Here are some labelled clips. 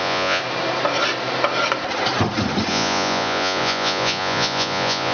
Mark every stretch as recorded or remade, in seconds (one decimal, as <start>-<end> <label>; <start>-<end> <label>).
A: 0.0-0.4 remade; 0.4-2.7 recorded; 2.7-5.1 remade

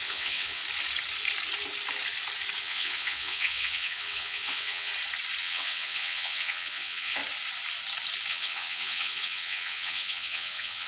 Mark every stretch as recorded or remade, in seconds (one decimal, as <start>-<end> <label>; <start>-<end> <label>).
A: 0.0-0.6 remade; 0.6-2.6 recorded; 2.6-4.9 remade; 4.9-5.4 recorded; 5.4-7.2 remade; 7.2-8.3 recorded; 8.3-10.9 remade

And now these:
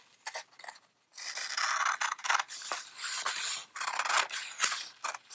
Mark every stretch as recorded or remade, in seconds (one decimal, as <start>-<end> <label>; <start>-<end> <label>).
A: 0.0-5.3 recorded